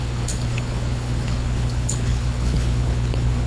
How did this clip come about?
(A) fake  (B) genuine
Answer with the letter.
A